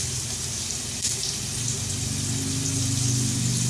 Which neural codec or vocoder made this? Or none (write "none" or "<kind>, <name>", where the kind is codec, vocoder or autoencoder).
none